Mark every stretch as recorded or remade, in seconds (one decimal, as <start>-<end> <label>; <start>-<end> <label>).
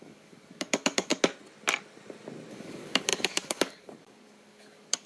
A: 0.0-1.1 remade; 1.1-2.5 recorded; 2.5-5.1 remade